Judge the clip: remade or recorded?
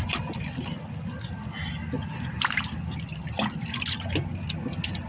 recorded